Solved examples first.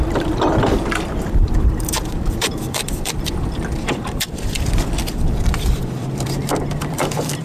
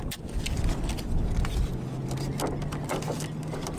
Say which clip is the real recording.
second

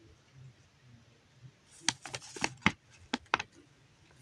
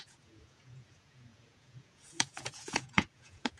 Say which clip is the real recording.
first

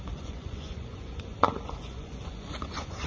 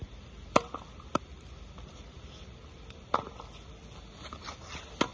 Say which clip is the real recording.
second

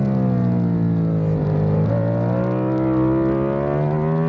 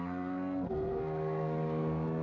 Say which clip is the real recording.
first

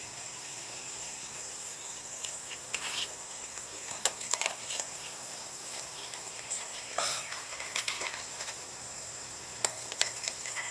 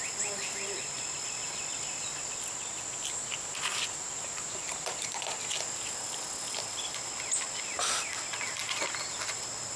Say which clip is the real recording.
second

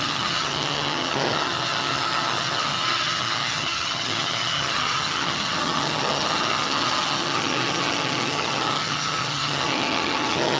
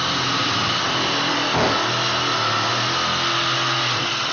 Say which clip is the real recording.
second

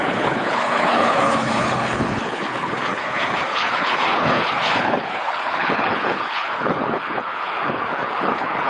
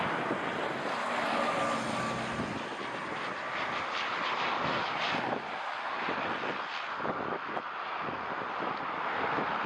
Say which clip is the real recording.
second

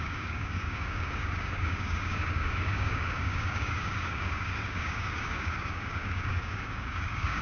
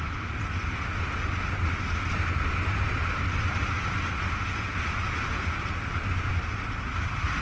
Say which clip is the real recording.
second